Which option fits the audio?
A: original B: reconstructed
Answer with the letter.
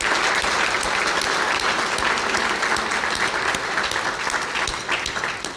A